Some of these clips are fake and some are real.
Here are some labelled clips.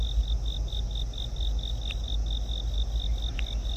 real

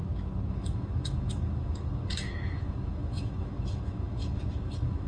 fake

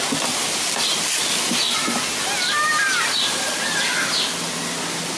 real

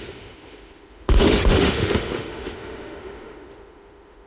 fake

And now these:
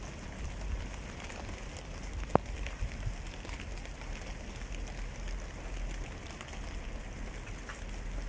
real